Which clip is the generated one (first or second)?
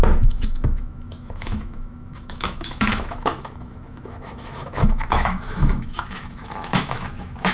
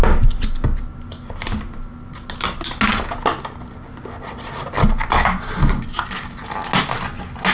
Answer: first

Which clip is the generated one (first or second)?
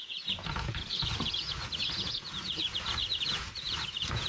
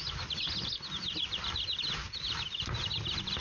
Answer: first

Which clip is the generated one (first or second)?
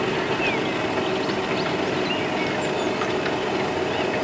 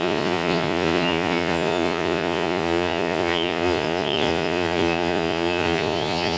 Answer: second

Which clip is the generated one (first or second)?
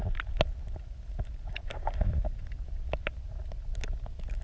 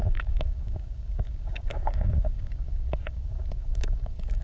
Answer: second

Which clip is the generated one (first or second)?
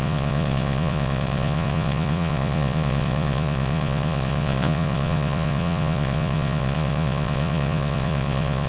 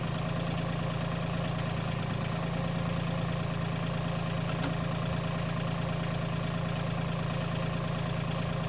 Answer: first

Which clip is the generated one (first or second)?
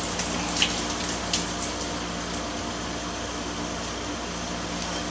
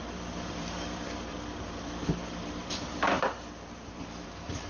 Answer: second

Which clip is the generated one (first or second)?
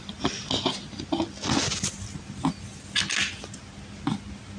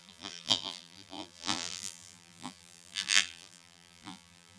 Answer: second